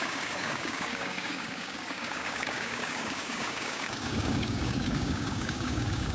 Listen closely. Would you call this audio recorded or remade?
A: remade